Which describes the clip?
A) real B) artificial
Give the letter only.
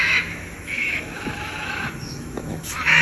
B